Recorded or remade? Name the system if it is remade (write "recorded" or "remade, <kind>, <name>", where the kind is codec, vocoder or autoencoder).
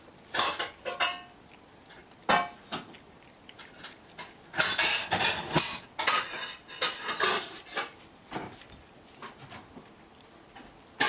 recorded